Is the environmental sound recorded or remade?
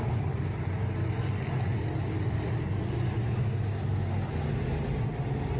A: recorded